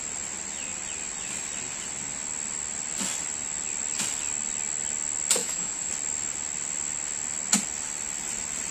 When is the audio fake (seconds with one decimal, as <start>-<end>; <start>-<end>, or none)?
5.4-5.9